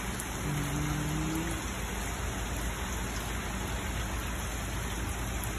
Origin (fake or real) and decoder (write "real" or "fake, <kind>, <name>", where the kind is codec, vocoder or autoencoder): real